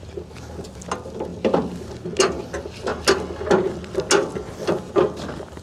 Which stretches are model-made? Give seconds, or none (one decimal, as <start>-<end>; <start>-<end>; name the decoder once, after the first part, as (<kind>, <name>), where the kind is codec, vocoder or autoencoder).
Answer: none